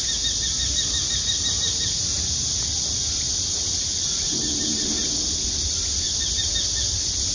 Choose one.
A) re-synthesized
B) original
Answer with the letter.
B